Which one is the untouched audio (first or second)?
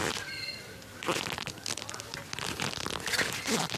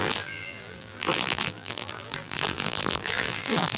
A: first